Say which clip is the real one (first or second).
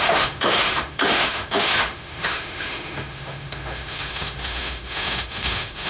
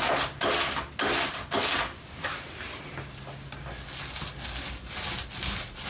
second